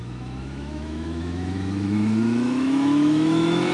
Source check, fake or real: fake